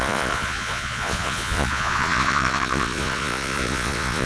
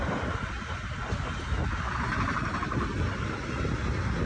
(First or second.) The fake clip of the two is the first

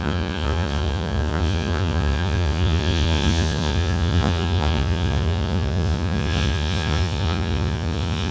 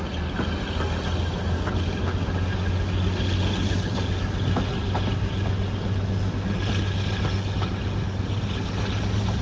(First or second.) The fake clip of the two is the first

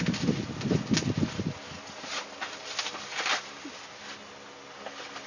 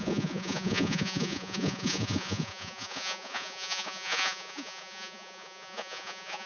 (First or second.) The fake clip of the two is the second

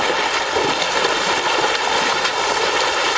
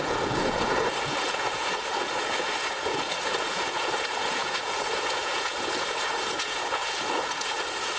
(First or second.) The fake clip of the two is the second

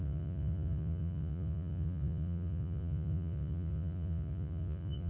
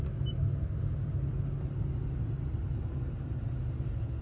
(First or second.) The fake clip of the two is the first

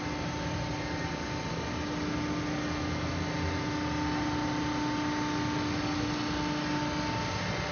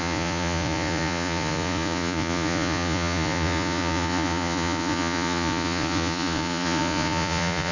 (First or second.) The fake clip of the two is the second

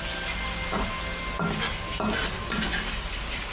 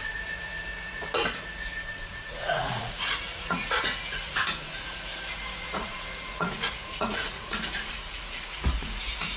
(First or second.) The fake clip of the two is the second